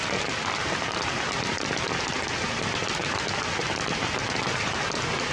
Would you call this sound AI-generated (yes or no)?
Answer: no